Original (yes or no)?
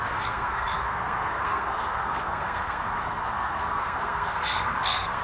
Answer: no